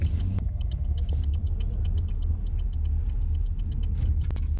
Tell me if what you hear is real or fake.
real